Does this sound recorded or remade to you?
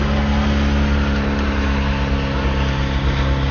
recorded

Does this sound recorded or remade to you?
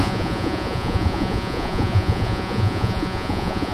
remade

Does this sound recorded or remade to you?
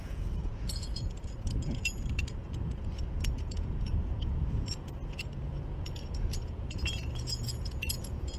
remade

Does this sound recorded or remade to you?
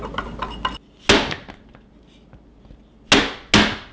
recorded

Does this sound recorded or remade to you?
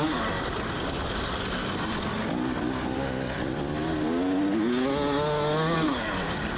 recorded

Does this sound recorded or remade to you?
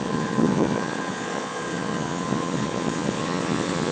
remade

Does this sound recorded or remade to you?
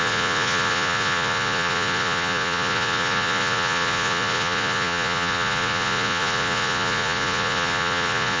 remade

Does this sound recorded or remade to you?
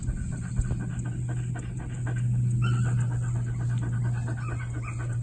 recorded